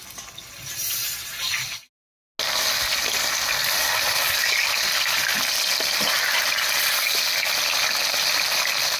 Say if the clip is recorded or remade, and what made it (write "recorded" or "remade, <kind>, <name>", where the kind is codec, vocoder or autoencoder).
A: recorded